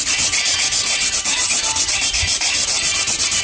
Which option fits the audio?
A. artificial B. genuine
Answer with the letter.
B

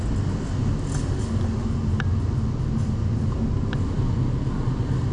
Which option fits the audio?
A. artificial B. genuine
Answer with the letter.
B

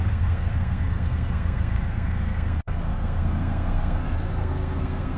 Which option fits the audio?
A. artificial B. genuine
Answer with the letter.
A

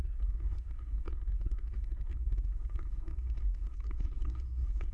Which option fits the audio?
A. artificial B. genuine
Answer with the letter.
A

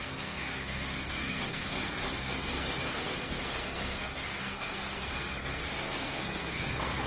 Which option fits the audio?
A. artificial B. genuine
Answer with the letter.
A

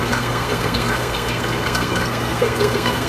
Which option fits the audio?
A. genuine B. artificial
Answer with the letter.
B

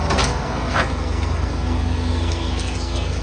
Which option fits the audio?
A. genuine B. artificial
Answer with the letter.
B